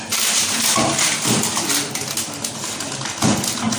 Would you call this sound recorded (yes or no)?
yes